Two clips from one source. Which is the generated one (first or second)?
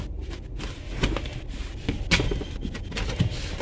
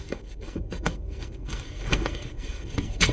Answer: second